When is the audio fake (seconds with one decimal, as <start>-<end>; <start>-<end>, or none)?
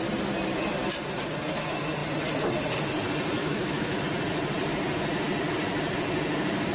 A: 3.4-4.0